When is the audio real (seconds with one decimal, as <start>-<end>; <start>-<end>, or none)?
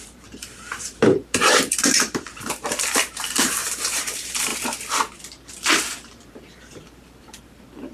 4.5-5.5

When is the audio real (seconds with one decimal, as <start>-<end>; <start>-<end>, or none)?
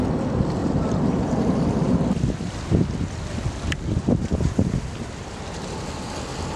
0.0-0.6; 4.6-6.6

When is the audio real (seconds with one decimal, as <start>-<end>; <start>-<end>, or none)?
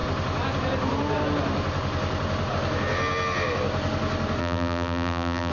0.0-4.4